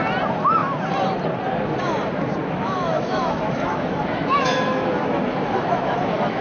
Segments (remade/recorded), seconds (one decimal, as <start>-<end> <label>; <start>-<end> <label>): 0.0-2.4 recorded; 2.4-6.4 remade